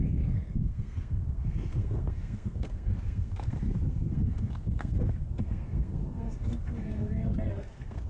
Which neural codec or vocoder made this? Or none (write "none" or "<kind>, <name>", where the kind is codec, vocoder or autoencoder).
codec, SNAC